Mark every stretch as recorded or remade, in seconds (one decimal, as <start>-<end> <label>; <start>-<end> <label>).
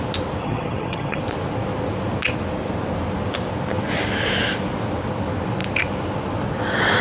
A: 0.0-0.4 recorded; 0.4-1.2 remade; 1.2-7.0 recorded